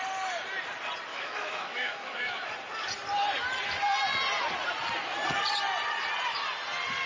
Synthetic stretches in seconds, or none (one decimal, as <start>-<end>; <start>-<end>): 1.1-2.5